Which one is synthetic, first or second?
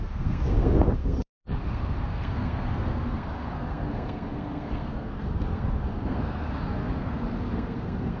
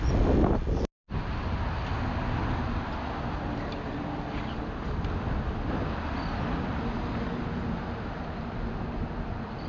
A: first